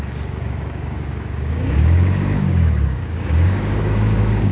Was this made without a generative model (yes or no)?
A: no